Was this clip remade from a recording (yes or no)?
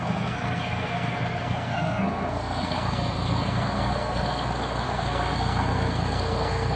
yes